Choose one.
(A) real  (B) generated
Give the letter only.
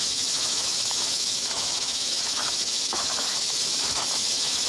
B